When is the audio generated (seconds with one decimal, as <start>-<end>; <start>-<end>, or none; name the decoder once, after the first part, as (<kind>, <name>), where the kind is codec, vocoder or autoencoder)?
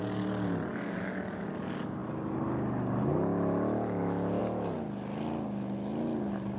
0.7-1.5 (codec, DAC)